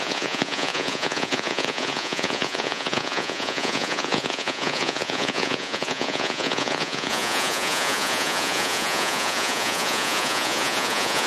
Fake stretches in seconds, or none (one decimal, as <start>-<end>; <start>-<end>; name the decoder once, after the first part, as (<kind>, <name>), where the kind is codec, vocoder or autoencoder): 0.0-11.3 (vocoder, Vocos)